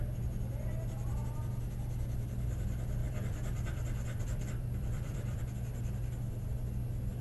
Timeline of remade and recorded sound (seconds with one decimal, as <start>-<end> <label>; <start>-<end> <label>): 0.0-3.0 recorded; 3.0-5.4 remade; 5.4-7.2 recorded